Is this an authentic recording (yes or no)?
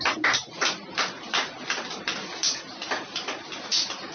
yes